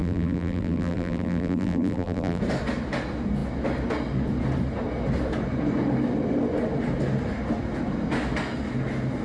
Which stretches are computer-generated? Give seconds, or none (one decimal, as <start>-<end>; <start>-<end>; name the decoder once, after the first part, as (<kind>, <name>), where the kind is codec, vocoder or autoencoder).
0.0-2.4 (vocoder, BigVGAN v2)